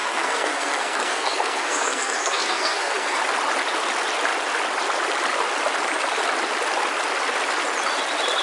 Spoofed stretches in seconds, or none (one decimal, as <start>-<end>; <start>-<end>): 0.0-3.2